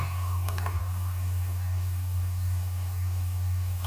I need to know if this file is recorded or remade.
remade